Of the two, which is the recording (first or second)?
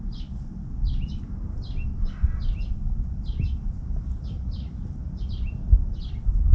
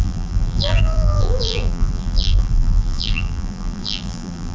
first